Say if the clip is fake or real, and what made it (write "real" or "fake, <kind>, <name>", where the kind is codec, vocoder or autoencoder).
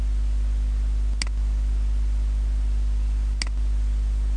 real